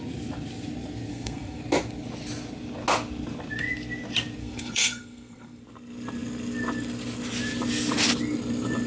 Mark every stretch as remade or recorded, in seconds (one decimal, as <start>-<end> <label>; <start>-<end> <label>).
0.0-1.1 recorded; 1.1-1.6 remade; 1.6-4.4 recorded; 4.4-5.6 remade; 5.6-8.9 recorded